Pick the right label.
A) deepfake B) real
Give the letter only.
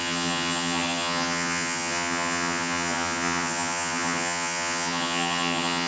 A